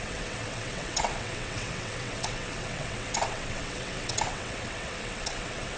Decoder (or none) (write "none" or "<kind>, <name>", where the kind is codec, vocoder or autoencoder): vocoder, WaveNeXt